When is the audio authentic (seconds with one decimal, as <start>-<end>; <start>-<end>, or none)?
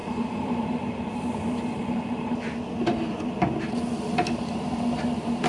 2.3-2.9; 3.6-5.5